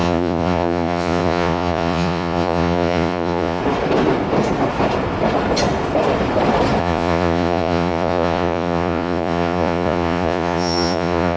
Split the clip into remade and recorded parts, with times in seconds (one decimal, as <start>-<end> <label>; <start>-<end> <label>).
0.0-3.6 remade; 3.6-6.8 recorded; 6.8-11.4 remade